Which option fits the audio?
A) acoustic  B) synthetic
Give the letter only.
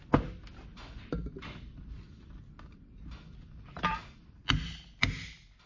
A